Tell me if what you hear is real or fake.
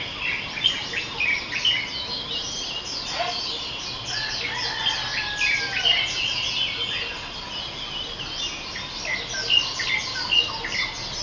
real